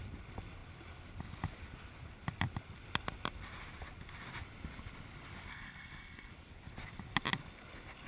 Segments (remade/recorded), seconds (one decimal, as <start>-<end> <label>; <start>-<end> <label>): 0.0-5.5 recorded; 5.5-6.3 remade; 6.3-8.1 recorded